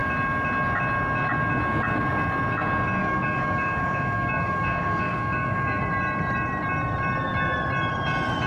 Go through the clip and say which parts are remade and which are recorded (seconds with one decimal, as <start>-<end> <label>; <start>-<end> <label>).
0.0-3.0 recorded; 3.0-5.8 remade; 5.8-8.5 recorded